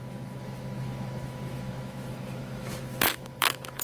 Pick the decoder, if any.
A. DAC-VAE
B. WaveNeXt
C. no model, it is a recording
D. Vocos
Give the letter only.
A